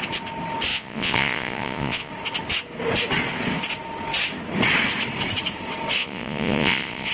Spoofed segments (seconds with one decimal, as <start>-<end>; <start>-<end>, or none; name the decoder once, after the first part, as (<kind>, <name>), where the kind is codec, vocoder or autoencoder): 0.7-2.1 (vocoder, Vocos); 6.0-7.1